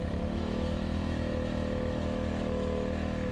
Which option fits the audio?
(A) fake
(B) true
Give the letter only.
A